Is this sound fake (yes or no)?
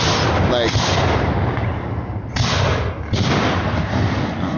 no